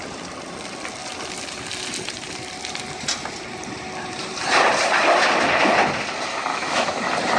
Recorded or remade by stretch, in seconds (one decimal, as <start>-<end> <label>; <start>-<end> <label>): 0.0-6.5 recorded; 6.5-7.0 remade; 7.0-7.4 recorded